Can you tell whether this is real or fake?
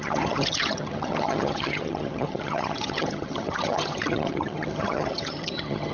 fake